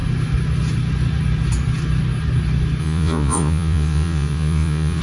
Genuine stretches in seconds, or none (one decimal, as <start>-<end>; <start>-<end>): 0.0-2.8